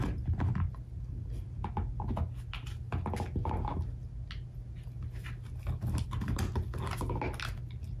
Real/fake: real